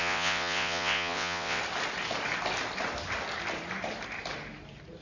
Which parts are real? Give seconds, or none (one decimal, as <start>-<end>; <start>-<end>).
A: 1.6-5.0